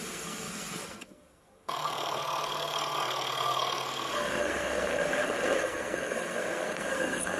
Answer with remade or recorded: remade